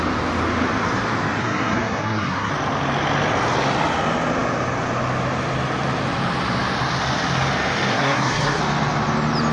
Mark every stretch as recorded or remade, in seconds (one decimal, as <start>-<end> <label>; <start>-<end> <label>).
0.0-1.4 recorded; 1.4-2.5 remade; 2.5-7.9 recorded; 7.9-8.6 remade; 8.6-9.5 recorded